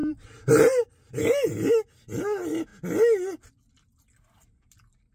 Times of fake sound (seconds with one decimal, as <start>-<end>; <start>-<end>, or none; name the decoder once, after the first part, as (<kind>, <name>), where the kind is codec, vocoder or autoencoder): 0.0-1.1 (vocoder, BigVGAN v2)